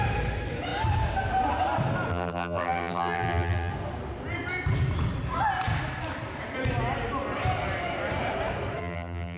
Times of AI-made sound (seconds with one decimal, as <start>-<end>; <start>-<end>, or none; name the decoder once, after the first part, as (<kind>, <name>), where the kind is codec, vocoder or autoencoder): 2.1-3.7 (vocoder, BigVGAN v2); 8.8-9.4